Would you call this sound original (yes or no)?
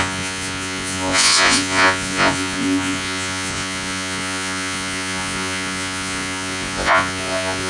no